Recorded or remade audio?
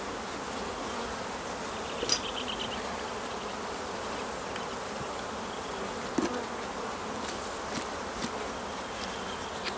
recorded